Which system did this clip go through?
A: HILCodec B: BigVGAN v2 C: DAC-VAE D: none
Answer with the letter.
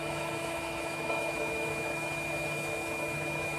C